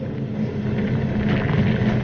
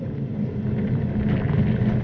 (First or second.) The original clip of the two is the first